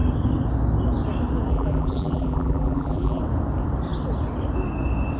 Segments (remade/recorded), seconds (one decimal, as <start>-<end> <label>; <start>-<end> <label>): 0.0-1.5 recorded; 1.5-3.2 remade; 3.2-5.2 recorded